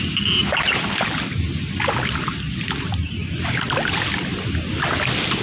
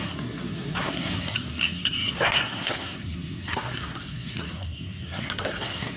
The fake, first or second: second